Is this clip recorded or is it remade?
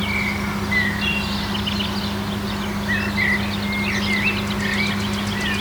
recorded